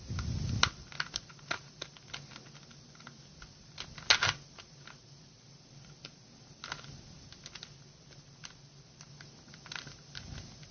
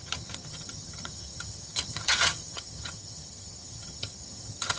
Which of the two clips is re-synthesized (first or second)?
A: second